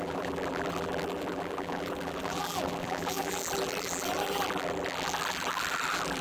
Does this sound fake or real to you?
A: fake